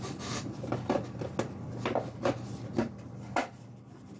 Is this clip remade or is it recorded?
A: recorded